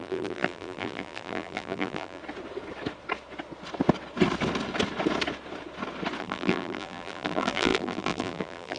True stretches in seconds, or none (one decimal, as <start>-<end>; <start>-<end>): 2.2-6.2